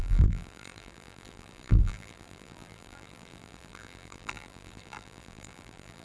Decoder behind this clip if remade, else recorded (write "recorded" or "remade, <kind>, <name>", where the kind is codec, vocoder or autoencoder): remade, vocoder, BigVGAN v2